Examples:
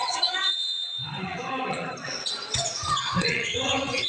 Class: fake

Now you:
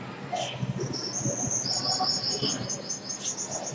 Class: real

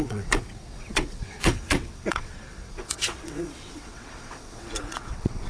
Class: fake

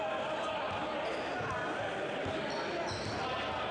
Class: real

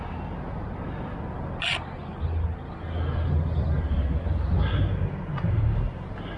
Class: real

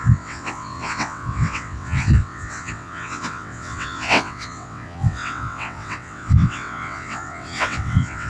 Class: fake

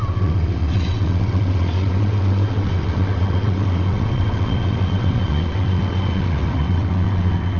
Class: fake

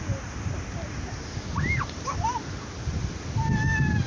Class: real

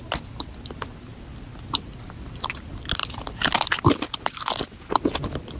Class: real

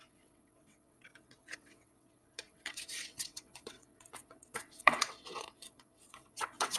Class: fake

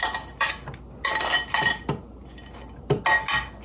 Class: real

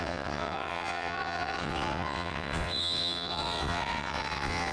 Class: fake